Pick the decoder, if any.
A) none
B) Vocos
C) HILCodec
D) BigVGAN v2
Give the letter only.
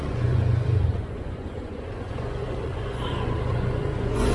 B